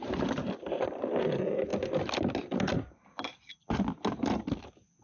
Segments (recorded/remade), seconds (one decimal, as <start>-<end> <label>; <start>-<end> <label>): 0.0-5.0 recorded